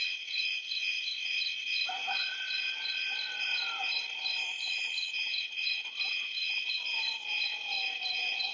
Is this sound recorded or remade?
remade